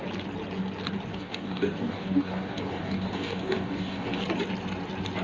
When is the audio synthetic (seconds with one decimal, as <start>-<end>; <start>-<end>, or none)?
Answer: 1.1-4.2